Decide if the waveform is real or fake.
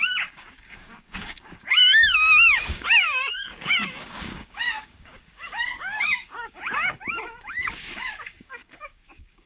fake